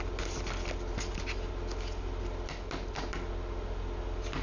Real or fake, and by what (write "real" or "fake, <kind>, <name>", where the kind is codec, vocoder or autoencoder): real